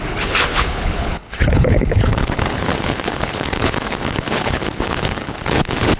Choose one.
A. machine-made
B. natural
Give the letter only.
A